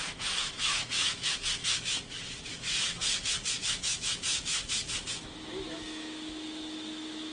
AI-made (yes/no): yes